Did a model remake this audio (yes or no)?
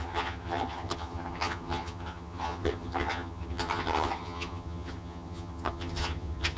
yes